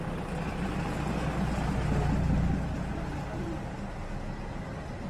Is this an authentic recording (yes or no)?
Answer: yes